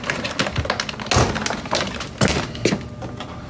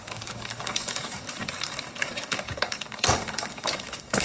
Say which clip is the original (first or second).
first